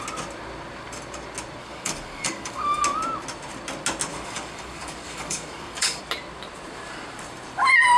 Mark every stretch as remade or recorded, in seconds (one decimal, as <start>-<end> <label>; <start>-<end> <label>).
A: 0.0-1.6 recorded; 1.6-2.8 remade; 2.8-4.1 recorded; 4.1-6.0 remade; 6.0-8.0 recorded